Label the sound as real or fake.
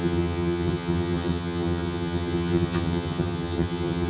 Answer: fake